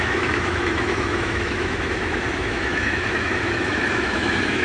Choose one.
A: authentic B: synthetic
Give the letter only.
B